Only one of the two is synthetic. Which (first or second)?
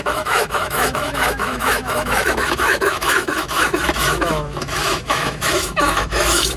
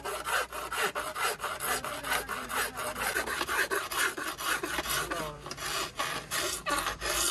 first